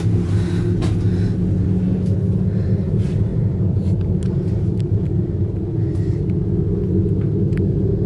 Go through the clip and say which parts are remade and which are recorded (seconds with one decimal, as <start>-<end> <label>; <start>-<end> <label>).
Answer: 0.0-3.3 recorded; 3.3-5.2 remade; 5.2-8.1 recorded